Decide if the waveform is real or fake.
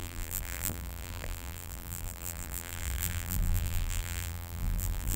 fake